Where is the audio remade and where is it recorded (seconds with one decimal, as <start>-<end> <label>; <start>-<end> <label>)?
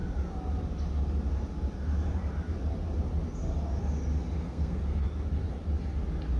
0.0-4.4 recorded; 4.4-5.0 remade; 5.0-6.4 recorded